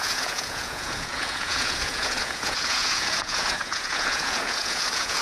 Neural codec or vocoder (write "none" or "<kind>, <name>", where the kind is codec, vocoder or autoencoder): vocoder, Vocos